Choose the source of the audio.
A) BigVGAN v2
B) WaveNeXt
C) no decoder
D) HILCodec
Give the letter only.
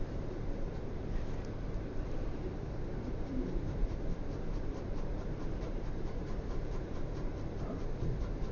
A